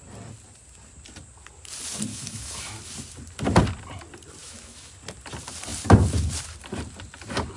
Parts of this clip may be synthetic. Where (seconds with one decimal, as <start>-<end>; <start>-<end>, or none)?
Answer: 2.1-2.8; 4.4-4.9